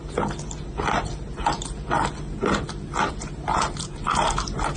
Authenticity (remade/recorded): recorded